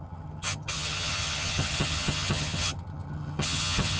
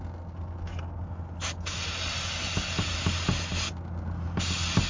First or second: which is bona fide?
second